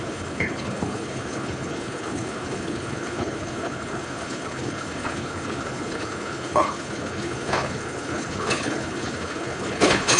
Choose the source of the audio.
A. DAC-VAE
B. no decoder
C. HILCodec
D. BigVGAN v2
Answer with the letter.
C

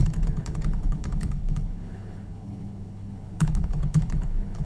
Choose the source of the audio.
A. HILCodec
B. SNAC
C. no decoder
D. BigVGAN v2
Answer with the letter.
A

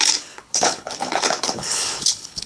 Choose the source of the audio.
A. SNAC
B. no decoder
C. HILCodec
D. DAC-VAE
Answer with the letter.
C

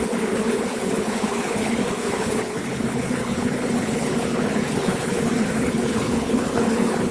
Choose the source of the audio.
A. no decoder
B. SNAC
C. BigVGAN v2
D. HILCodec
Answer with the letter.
D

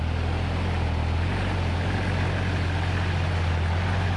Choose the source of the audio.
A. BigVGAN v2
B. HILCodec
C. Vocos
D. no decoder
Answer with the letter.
D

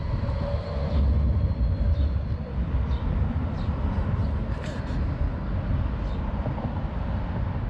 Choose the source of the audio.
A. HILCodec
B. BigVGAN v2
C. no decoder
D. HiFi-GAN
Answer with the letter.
C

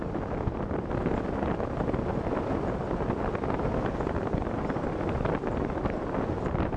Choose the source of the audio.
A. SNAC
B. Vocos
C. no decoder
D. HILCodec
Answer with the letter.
C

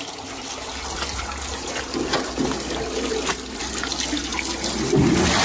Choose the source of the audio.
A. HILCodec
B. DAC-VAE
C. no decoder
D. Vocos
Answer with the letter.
C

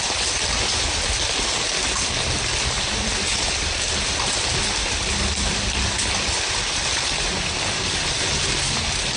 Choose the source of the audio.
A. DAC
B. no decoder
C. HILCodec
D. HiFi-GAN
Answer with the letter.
B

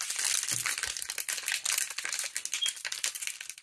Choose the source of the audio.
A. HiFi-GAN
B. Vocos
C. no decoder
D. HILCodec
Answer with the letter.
C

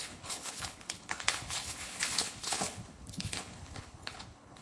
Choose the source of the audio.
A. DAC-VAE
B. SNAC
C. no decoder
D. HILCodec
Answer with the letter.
D